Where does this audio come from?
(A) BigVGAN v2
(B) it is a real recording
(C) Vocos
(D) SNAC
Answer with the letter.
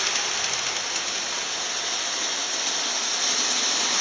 B